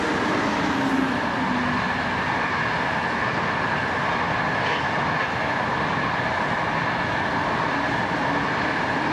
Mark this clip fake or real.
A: real